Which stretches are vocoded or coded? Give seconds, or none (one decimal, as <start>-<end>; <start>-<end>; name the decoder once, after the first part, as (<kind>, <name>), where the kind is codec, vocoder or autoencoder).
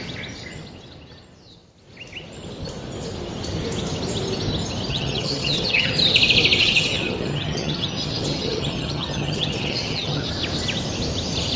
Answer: 4.9-5.9 (vocoder, HiFi-GAN); 6.6-10.3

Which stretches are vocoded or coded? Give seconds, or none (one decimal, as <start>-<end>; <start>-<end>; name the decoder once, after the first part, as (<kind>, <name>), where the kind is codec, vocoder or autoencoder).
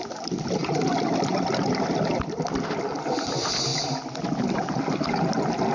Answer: 0.6-2.7 (vocoder, BigVGAN v2)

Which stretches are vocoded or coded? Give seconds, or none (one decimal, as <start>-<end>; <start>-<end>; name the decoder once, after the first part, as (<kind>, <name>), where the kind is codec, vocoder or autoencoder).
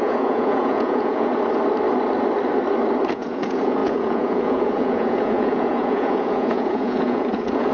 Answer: 0.0-1.3 (vocoder, Vocos); 3.1-7.7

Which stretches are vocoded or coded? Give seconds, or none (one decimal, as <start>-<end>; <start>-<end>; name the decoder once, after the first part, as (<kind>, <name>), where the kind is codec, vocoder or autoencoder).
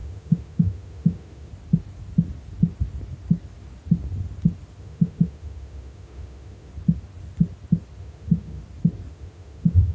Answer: 0.0-1.5 (autoencoder, DAC-VAE); 4.8-6.7; 8.0-8.6; 9.1-9.9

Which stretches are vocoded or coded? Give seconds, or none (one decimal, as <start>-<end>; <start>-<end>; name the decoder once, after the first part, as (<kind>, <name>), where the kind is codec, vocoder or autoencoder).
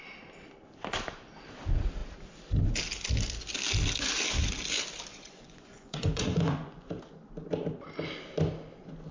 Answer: 5.1-6.9 (vocoder, Vocos)